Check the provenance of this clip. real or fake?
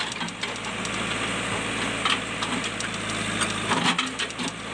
real